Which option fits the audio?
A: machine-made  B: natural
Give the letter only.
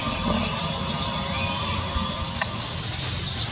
B